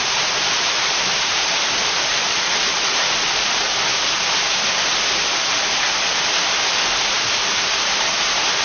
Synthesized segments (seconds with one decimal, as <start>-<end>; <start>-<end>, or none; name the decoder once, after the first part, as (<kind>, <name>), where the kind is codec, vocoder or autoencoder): 0.0-3.9 (vocoder, BigVGAN v2); 7.0-8.6